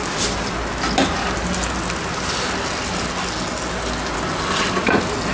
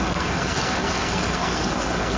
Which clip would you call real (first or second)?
first